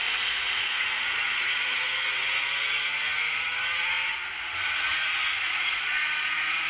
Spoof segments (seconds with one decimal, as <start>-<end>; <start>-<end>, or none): 0.0-6.7